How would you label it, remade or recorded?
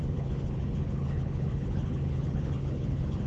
remade